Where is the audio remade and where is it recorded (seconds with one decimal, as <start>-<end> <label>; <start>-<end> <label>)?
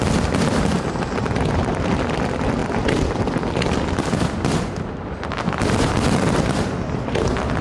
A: 0.0-7.6 recorded